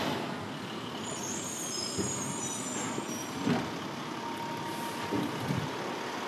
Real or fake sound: real